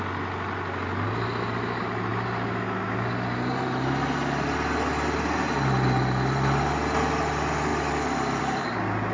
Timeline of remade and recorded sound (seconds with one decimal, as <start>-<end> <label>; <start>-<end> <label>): 0.0-9.1 recorded